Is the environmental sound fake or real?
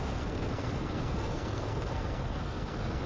fake